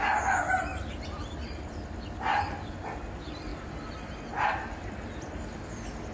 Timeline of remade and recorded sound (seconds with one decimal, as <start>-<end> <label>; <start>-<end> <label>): 0.0-0.7 recorded; 0.7-2.7 remade; 2.7-3.5 recorded; 3.5-6.1 remade